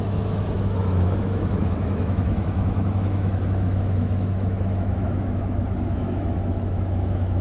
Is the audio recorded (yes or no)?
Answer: no